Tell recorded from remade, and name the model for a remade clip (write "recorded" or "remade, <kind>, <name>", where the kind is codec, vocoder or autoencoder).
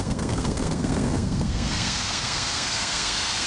remade, codec, SNAC